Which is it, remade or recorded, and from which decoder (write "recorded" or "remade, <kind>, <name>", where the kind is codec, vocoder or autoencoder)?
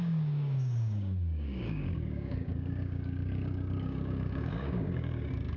remade, codec, DAC